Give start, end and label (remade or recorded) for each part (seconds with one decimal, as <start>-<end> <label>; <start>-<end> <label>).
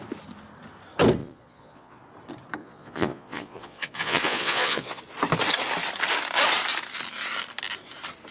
0.0-1.2 recorded; 1.2-2.0 remade; 2.0-2.6 recorded; 2.6-5.0 remade; 5.0-8.3 recorded